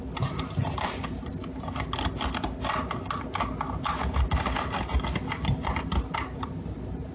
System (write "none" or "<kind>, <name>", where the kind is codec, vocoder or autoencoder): none